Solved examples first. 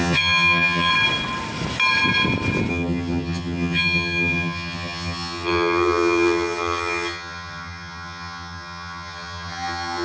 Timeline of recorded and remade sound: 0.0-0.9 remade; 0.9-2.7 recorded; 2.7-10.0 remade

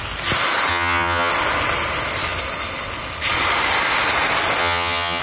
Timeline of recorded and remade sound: 0.0-0.7 recorded; 0.7-1.3 remade; 1.3-4.6 recorded; 4.6-5.2 remade

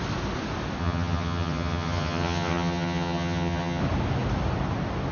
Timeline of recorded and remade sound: 0.0-0.8 recorded; 0.8-3.8 remade; 3.8-5.1 recorded

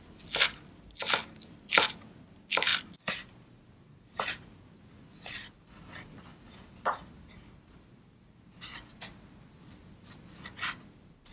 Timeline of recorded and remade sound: 0.0-11.3 recorded

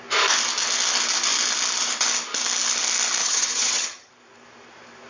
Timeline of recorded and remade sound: 0.0-3.2 recorded; 3.2-4.1 remade; 4.1-5.1 recorded

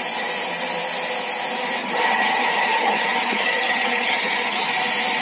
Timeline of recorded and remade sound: 0.0-1.8 recorded; 1.8-4.7 remade; 4.7-5.2 recorded

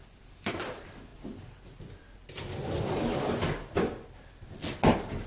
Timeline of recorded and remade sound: 0.0-5.3 recorded